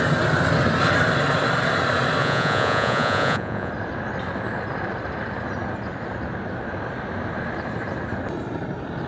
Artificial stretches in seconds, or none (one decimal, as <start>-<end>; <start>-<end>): 2.2-3.7